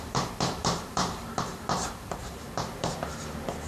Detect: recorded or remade remade